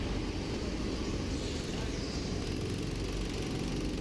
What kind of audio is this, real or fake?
real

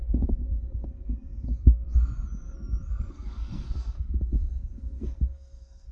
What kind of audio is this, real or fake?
fake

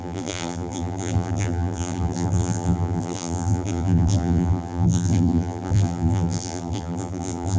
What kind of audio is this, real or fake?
fake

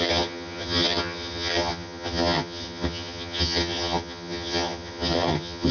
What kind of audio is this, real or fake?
fake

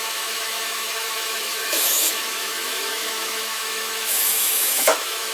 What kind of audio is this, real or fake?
fake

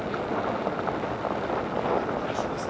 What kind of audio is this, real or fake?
real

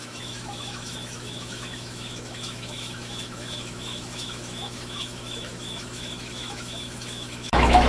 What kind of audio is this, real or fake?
fake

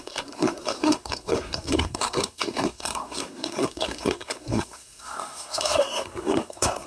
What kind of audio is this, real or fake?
fake